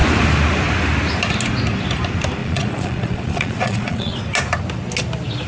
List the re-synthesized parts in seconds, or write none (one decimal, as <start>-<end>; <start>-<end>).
2.4-4.2